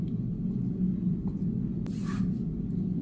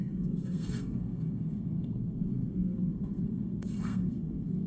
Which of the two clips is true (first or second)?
first